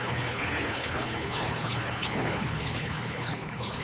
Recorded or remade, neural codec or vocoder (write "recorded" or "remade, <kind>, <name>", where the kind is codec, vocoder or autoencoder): remade, codec, HILCodec